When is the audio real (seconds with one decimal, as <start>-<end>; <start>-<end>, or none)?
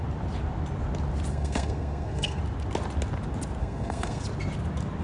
0.0-1.3; 2.4-3.6; 4.2-5.0